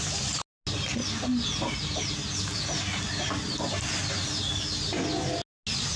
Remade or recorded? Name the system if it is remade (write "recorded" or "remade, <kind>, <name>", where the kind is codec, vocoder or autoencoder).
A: recorded